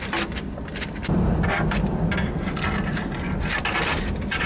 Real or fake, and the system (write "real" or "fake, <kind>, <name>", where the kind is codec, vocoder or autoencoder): real